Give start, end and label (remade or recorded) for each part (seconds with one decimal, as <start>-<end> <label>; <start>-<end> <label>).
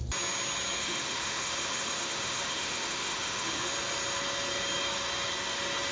0.0-0.8 recorded; 0.8-3.7 remade; 3.7-5.9 recorded